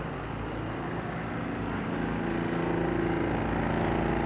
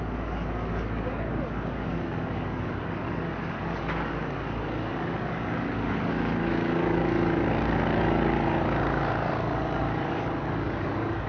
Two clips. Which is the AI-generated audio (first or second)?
second